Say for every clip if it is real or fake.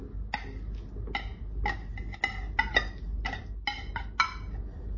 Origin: real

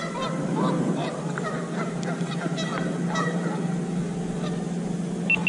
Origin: real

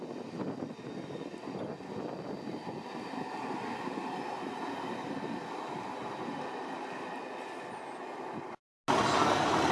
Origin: real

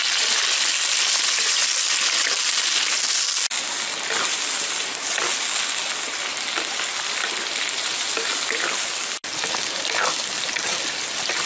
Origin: real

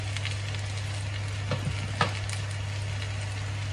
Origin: real